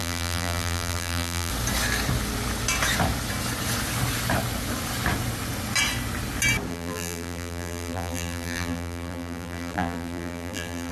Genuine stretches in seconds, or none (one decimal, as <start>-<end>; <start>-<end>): 1.5-6.7